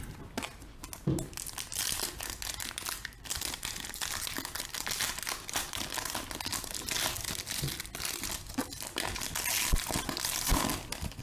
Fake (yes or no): no